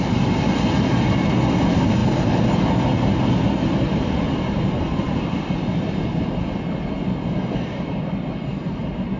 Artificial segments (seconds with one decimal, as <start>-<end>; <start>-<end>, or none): none